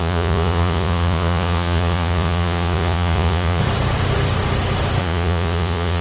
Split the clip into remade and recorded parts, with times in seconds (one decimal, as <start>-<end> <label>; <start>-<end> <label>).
0.0-3.6 remade; 3.6-5.0 recorded; 5.0-6.0 remade